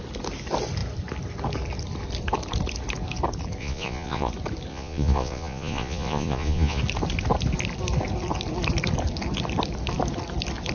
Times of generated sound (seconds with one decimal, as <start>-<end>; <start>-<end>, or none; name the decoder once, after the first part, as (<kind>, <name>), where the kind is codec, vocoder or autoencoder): 3.6-4.3 (vocoder, Vocos); 4.7-6.8